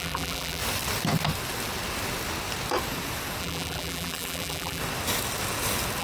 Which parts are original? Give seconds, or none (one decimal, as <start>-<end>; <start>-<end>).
0.6-3.4; 4.8-6.0